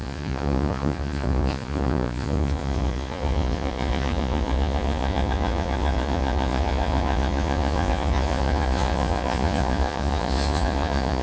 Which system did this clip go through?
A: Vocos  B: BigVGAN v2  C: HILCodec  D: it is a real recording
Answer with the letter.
A